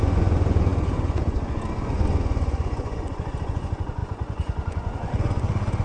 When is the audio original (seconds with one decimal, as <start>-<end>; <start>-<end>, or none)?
none